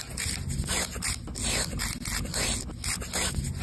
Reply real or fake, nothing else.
real